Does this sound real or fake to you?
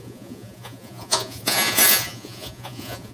fake